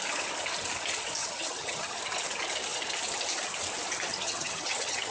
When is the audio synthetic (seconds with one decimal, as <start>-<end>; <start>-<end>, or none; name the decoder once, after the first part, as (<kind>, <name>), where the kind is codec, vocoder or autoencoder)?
1.2-2.0 (vocoder, HiFi-GAN); 4.1-5.1